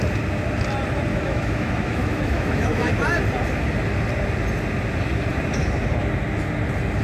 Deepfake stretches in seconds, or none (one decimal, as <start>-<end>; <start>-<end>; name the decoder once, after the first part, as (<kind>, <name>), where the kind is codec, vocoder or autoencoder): 1.1-2.9 (autoencoder, DAC-VAE)